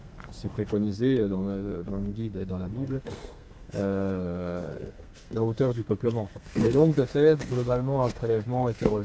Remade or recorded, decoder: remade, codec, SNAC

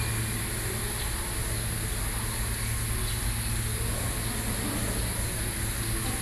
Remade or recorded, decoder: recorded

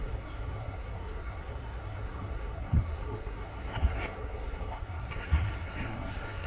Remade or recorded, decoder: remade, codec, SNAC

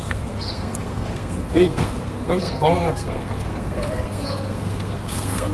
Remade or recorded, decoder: remade, codec, SNAC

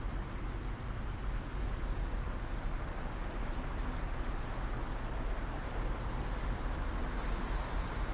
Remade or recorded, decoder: recorded